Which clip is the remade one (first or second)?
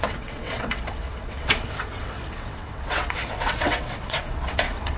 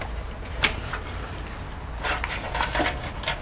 first